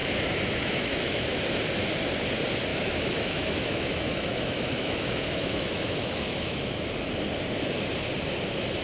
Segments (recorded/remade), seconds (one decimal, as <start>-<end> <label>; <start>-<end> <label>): 0.0-1.4 remade; 1.4-2.7 recorded; 2.7-6.9 remade; 6.9-8.8 recorded